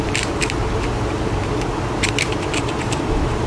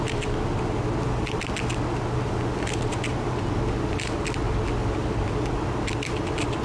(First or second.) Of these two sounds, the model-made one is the first